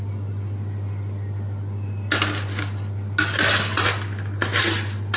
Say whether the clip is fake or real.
real